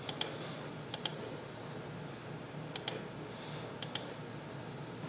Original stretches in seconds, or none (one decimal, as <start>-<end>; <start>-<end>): 0.0-5.1